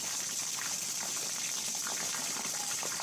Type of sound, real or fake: real